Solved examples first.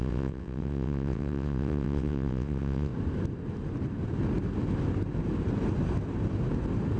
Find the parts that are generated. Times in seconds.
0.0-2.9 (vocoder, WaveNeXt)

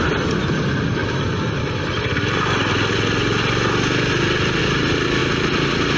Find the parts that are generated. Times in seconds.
none